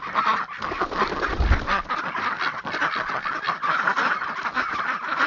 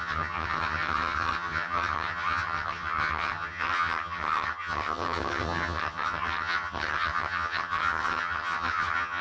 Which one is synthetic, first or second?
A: second